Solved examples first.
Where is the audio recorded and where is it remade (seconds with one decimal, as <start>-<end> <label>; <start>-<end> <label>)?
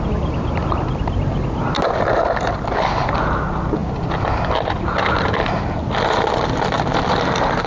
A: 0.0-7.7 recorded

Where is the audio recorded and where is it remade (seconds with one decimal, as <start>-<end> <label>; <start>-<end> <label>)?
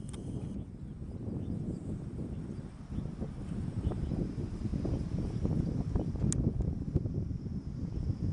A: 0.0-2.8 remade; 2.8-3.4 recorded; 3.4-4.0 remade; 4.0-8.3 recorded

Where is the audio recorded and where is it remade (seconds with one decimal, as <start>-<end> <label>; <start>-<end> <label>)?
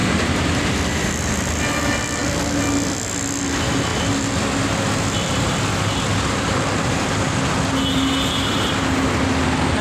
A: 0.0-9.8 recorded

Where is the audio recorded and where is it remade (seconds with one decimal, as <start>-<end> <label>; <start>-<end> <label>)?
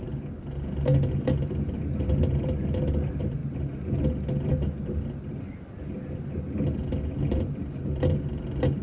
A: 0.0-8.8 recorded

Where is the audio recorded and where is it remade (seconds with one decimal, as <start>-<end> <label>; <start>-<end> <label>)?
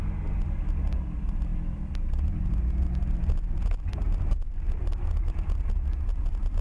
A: 0.0-6.6 recorded